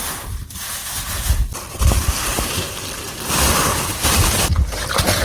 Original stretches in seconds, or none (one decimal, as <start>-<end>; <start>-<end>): 0.8-3.9